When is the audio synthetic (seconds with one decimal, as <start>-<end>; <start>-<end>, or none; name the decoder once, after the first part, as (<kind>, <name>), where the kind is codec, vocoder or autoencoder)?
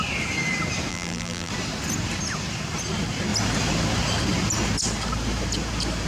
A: 0.9-1.5 (vocoder, BigVGAN v2)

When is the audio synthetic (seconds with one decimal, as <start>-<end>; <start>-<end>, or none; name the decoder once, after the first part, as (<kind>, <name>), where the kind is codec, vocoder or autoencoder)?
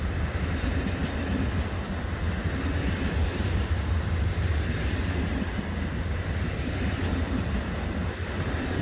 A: 8.0-8.8 (vocoder, BigVGAN v2)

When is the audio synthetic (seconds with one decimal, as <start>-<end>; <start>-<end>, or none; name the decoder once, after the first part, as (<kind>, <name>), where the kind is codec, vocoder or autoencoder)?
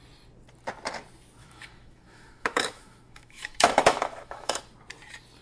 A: 1.4-4.6 (autoencoder, DAC-VAE)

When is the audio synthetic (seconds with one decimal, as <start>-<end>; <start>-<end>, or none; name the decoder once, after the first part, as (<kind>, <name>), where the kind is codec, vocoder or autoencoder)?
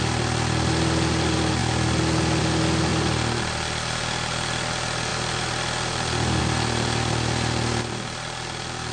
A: none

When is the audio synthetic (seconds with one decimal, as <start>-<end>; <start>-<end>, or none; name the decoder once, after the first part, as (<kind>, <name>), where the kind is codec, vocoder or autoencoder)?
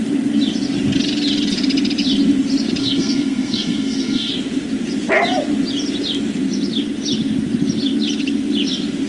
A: 2.8-4.3 (codec, SNAC)